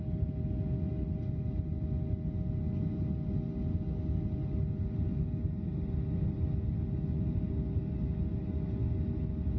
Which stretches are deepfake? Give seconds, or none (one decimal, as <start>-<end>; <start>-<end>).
none